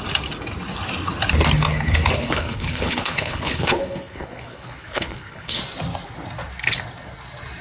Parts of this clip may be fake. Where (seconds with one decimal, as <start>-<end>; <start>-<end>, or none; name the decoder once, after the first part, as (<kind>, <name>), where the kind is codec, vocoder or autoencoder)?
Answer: 2.2-5.6 (codec, HILCodec)